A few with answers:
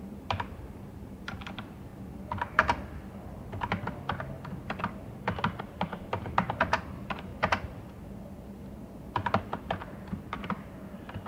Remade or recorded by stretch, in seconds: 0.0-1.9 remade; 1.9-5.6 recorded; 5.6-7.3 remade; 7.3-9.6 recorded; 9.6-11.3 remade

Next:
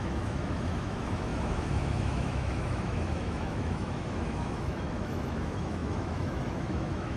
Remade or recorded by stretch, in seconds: 0.0-7.2 remade

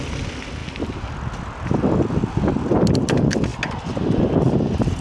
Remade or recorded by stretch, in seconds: 0.0-5.0 recorded